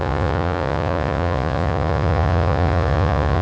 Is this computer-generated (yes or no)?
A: yes